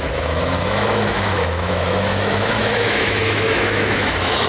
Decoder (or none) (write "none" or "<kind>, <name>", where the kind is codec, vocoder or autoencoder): autoencoder, DAC-VAE